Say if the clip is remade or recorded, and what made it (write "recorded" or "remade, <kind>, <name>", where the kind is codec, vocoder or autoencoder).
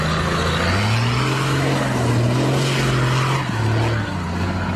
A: recorded